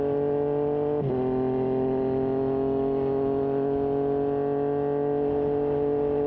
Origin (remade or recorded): recorded